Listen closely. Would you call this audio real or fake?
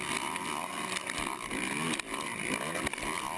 real